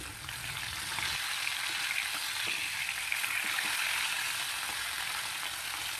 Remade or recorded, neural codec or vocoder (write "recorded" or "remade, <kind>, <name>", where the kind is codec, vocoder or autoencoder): recorded